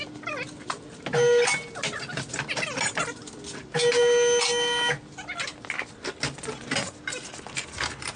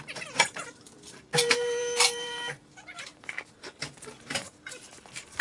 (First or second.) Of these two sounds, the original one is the first